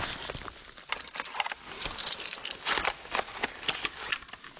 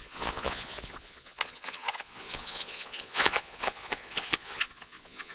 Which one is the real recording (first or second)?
first